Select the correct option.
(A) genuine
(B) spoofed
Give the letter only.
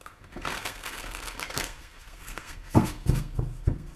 B